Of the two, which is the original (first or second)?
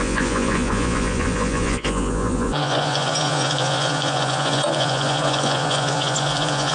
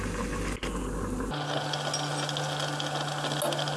second